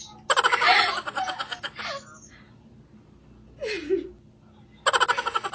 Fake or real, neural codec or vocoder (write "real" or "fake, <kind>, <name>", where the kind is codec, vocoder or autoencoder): real